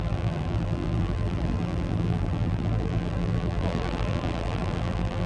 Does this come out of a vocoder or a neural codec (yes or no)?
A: yes